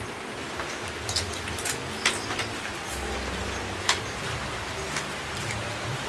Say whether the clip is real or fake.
real